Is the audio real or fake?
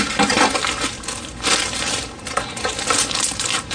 fake